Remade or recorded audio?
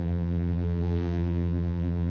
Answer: remade